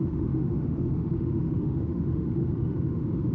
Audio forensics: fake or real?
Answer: fake